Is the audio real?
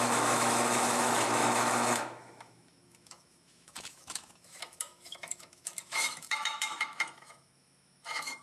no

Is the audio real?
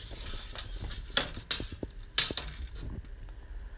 yes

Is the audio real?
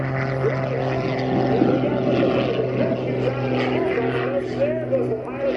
yes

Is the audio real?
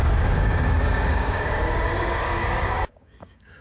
no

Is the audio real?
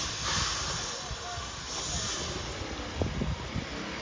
yes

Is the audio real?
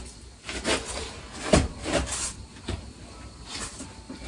yes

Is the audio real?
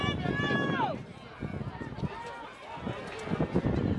yes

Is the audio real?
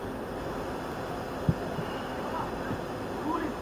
yes